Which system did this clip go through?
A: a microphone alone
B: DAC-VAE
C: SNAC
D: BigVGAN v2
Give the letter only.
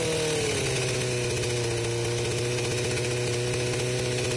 A